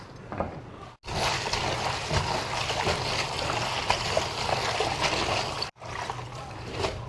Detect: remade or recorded recorded